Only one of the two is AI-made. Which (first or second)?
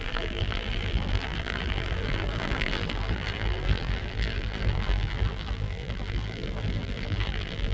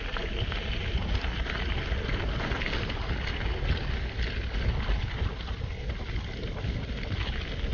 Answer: first